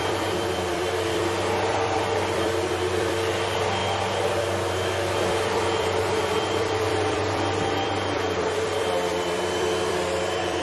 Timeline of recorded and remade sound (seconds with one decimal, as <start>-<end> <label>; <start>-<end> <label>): 0.0-1.2 remade; 1.2-1.7 recorded; 1.7-3.8 remade; 3.8-4.4 recorded; 4.4-10.6 remade